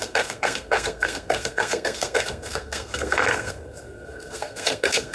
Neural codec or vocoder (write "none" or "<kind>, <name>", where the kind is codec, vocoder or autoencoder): codec, SNAC